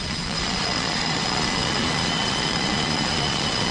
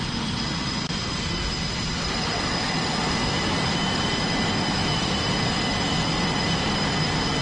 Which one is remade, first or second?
first